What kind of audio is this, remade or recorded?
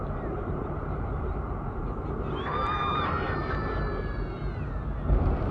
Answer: remade